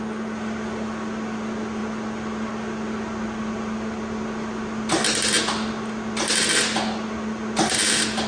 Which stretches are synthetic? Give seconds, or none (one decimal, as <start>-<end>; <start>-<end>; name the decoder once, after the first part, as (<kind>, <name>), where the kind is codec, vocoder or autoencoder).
none